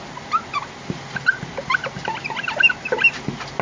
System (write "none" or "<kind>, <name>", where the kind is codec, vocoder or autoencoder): none